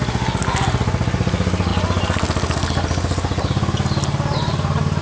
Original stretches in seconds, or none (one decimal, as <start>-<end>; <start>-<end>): 0.0-5.0

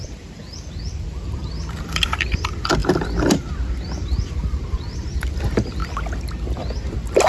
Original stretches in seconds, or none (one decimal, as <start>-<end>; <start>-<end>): 5.8-7.3

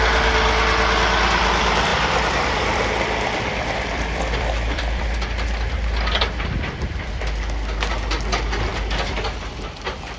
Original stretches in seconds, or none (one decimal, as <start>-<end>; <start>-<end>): 0.0-1.9; 7.2-10.2

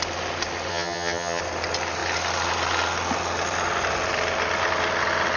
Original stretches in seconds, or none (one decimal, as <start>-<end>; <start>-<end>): 0.0-0.7; 1.4-5.4

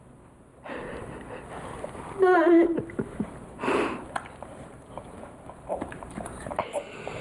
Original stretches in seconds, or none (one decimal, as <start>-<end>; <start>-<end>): 0.0-2.4; 6.7-7.2

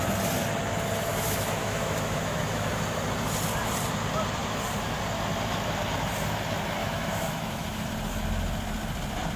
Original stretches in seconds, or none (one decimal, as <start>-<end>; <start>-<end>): 0.0-1.1; 2.7-6.8; 7.9-9.4

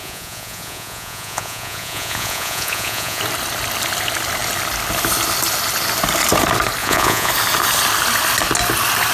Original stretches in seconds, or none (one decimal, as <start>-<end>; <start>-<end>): 3.2-6.8; 7.3-9.1